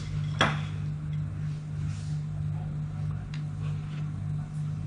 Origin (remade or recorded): recorded